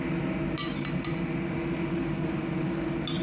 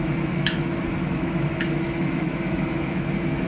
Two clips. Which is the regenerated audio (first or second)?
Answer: second